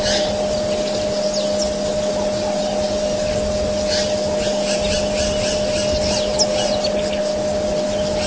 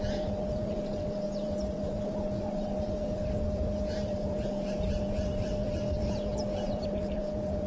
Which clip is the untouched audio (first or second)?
first